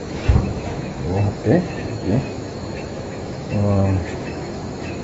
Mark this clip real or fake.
fake